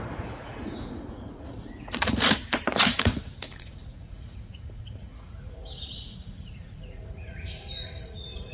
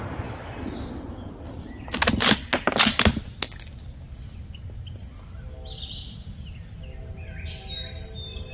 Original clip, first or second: second